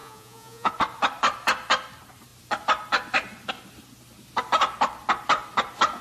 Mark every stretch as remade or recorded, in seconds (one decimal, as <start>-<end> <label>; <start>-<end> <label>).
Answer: 0.0-0.7 remade; 0.7-6.0 recorded